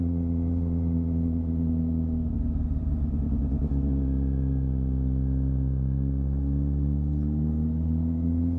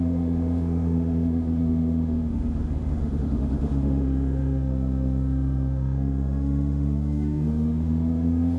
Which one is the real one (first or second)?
first